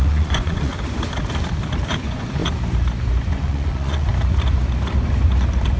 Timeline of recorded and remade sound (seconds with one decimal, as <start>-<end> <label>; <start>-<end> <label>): 0.0-0.7 remade; 0.7-1.9 recorded; 1.9-2.4 remade; 2.4-3.3 recorded; 3.3-4.1 remade; 4.1-5.8 recorded